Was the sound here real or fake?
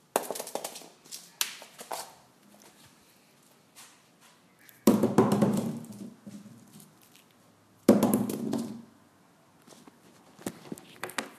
real